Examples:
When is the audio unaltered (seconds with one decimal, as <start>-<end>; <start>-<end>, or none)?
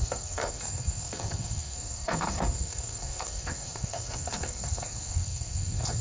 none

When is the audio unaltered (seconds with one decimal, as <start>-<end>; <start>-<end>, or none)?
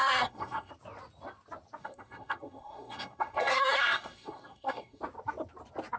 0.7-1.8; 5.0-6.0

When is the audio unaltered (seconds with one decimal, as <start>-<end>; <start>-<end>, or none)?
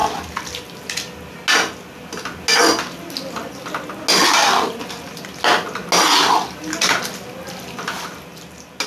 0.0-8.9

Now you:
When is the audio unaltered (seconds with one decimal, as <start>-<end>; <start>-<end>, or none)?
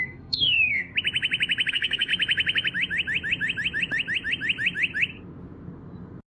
0.9-1.7; 2.1-6.3